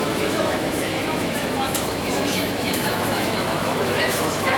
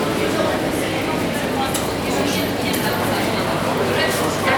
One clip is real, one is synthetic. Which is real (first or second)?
second